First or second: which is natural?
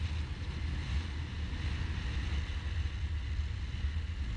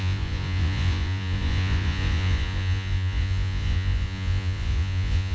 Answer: first